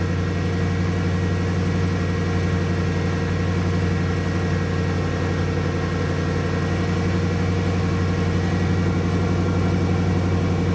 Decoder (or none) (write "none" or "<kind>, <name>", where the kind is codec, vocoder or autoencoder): none